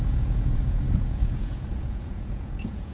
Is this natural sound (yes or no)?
no